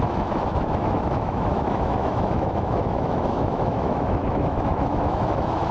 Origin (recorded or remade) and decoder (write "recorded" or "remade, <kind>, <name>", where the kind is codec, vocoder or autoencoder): remade, autoencoder, DAC-VAE